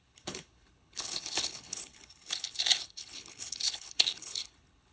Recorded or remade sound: remade